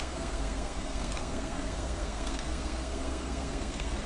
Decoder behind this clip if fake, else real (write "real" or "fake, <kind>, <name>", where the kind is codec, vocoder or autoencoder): fake, codec, SNAC